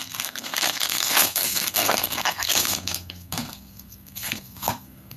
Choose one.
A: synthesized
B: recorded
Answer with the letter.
A